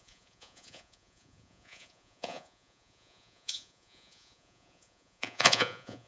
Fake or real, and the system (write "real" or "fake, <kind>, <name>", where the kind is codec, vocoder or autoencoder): fake, vocoder, Vocos